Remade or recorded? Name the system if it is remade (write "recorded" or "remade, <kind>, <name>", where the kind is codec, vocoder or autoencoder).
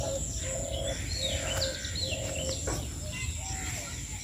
recorded